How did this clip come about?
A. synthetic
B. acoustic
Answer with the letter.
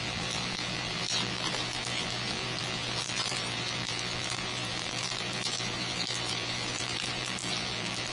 A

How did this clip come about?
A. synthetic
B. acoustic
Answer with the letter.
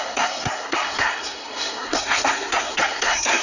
A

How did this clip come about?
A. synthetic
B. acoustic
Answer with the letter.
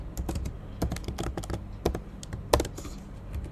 B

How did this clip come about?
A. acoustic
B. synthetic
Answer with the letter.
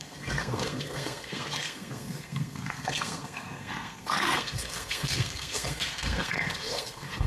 B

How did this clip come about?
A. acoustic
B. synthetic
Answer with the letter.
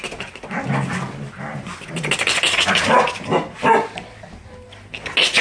A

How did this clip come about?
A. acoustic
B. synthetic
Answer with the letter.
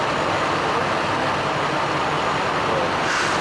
A